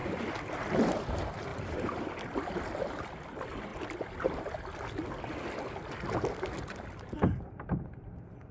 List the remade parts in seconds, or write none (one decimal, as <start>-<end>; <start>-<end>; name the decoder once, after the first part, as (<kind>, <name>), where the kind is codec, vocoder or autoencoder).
1.5-2.3 (vocoder, BigVGAN v2)